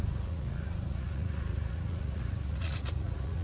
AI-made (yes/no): yes